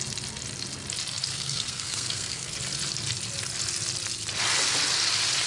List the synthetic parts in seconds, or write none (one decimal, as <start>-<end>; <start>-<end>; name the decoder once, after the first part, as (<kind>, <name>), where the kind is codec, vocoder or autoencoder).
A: 1.3-2.5 (codec, SNAC)